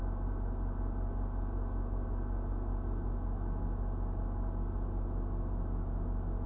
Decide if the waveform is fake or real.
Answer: real